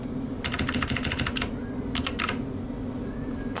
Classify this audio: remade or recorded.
recorded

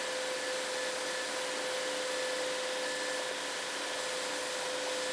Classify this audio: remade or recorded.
recorded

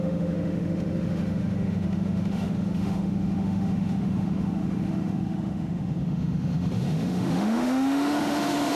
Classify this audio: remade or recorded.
remade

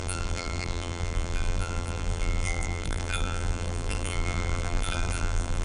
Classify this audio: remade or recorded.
remade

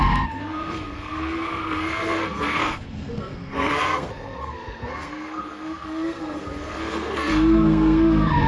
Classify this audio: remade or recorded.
remade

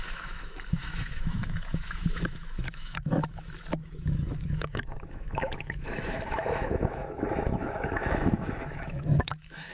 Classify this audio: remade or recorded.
remade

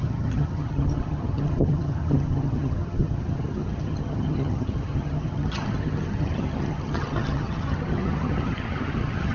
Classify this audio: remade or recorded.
remade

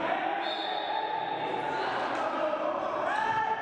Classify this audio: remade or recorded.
recorded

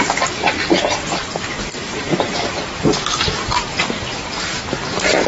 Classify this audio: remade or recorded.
recorded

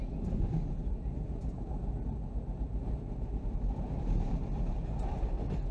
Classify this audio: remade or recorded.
remade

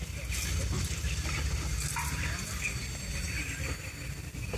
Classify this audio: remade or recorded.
recorded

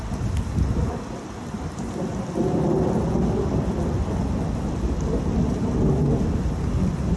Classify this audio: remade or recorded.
recorded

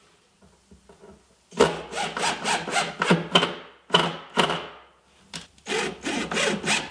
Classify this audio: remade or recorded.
recorded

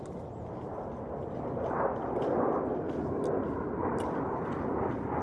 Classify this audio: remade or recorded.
recorded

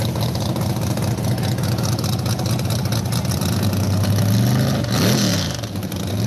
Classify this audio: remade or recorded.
recorded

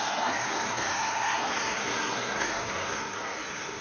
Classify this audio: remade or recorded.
remade